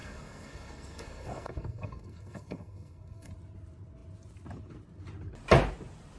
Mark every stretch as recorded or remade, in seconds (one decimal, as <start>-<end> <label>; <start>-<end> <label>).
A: 0.0-3.3 remade; 3.3-6.2 recorded